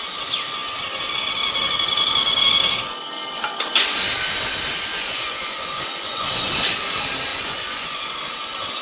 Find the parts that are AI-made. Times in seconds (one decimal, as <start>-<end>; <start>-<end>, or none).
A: 4.9-6.5; 7.3-8.1